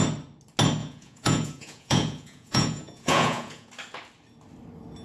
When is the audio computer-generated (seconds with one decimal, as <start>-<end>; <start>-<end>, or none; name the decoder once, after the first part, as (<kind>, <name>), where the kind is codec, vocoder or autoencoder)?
0.8-3.7 (vocoder, Vocos)